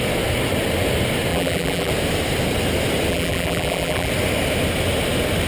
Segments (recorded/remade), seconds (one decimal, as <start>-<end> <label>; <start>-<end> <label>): 0.0-1.3 recorded; 1.3-1.9 remade; 1.9-3.1 recorded; 3.1-4.1 remade; 4.1-5.5 recorded